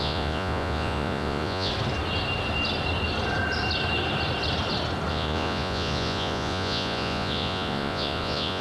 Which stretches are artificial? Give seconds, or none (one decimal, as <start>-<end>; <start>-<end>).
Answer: 0.0-1.7; 5.1-8.6